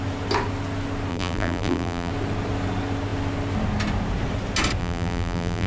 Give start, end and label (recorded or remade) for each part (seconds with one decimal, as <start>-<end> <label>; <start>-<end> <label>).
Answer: 0.0-1.1 recorded; 1.1-2.1 remade; 2.1-4.8 recorded; 4.8-5.7 remade